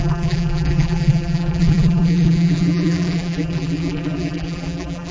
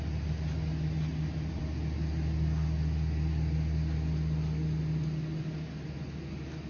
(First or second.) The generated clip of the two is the first